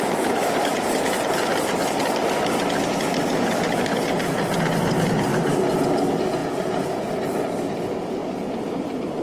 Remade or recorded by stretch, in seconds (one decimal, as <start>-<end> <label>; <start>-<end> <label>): 0.0-6.4 recorded; 6.4-7.1 remade; 7.1-9.2 recorded